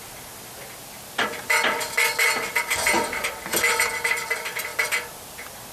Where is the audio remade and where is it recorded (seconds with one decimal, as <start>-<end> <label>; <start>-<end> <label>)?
0.0-5.7 recorded